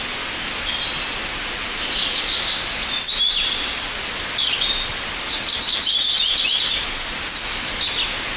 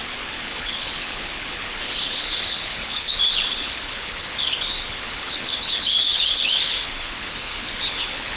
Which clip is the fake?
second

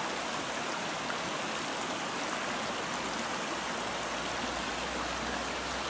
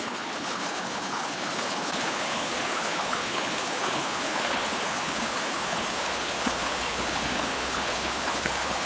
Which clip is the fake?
second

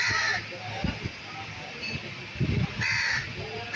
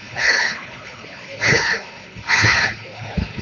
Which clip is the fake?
second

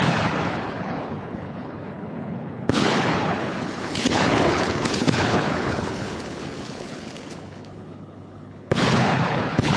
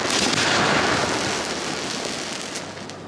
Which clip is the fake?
first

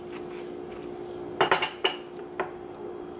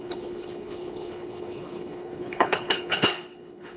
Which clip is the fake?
second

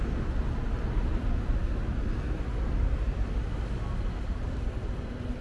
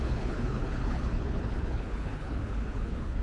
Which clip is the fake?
second